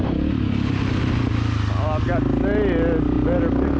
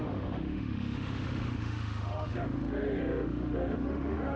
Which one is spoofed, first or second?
second